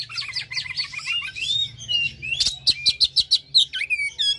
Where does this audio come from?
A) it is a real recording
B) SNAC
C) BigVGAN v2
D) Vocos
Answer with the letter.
A